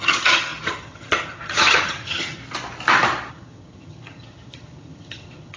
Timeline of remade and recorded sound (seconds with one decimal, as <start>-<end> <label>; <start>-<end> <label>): 0.0-2.4 remade; 2.4-3.3 recorded; 3.3-5.6 remade